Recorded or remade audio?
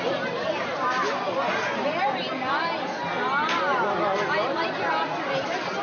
recorded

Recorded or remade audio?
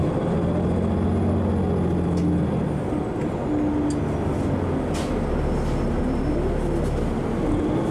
recorded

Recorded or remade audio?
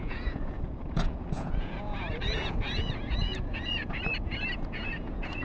remade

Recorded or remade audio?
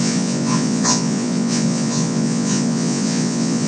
remade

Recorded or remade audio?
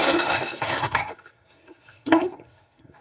remade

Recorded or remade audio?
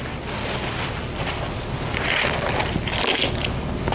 recorded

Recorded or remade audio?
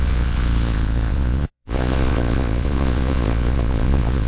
remade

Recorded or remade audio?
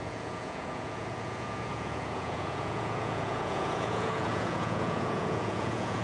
remade